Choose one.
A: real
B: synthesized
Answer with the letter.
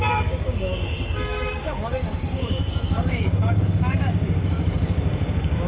B